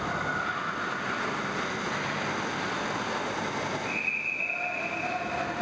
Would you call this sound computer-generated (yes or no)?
no